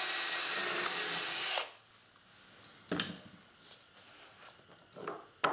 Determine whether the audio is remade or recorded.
recorded